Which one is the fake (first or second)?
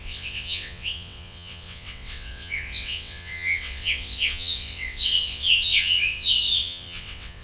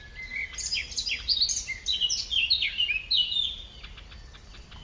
first